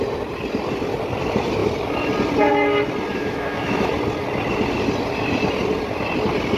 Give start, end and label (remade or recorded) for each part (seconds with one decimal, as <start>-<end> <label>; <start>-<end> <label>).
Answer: 0.0-3.1 recorded; 3.1-3.9 remade; 3.9-6.6 recorded